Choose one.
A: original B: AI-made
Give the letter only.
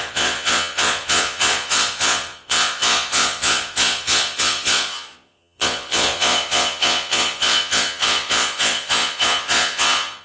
B